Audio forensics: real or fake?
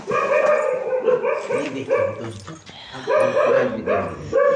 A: real